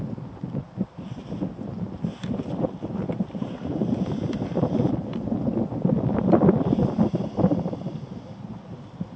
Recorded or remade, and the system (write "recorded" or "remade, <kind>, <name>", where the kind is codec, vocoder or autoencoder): recorded